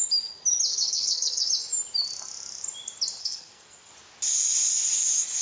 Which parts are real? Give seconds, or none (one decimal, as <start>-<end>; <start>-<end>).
0.0-0.7; 1.5-3.2; 3.9-5.4